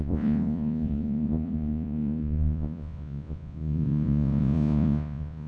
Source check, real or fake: fake